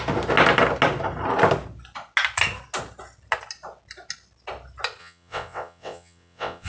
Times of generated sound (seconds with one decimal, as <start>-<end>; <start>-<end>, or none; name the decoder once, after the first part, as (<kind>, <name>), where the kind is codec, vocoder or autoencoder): 5.0-6.7 (vocoder, WaveNeXt)

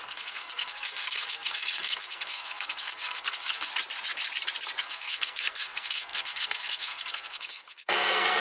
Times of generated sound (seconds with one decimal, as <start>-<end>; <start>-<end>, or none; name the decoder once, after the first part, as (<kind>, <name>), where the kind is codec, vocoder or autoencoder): 0.0-3.7 (codec, SNAC); 4.8-8.4

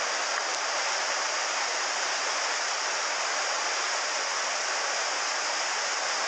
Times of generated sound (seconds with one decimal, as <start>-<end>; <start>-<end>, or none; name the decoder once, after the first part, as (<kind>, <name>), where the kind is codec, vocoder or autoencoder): 0.5-1.2 (vocoder, BigVGAN v2)